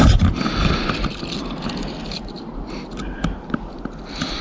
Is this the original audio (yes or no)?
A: yes